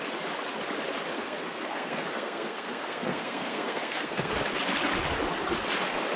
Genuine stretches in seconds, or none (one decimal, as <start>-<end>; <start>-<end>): 0.0-1.1; 4.3-6.2